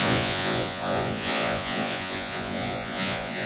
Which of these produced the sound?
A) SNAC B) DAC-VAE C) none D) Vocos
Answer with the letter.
D